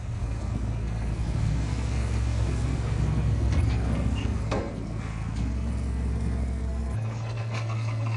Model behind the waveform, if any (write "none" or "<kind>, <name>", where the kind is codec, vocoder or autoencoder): codec, SNAC